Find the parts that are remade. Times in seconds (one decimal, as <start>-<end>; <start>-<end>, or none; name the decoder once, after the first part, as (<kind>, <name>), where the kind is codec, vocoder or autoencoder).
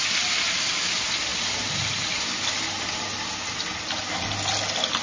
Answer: none